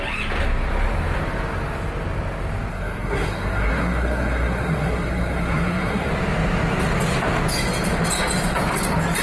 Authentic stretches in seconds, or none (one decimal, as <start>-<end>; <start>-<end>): 0.0-2.7; 6.1-9.2